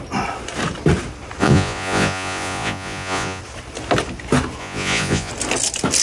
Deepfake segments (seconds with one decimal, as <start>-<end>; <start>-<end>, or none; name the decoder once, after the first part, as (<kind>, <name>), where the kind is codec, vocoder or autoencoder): 1.4-3.4 (vocoder, Vocos); 4.6-5.3